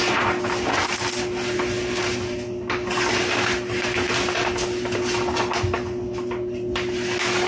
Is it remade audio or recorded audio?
recorded